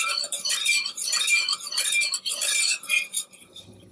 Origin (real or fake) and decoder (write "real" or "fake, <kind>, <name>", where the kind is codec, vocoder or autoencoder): fake, vocoder, BigVGAN v2